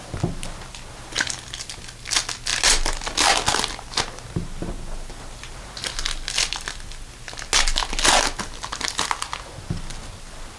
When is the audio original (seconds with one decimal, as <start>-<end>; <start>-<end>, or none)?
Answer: 0.0-10.6